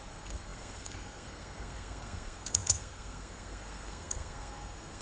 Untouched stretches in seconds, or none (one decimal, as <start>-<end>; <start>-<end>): none